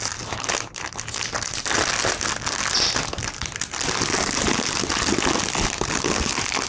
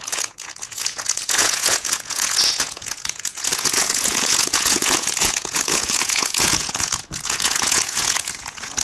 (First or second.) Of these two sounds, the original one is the first